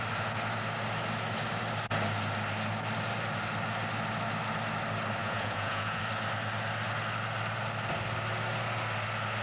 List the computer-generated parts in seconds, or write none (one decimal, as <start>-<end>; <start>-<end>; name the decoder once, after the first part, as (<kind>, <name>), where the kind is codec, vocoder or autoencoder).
5.2-6.0 (vocoder, Vocos)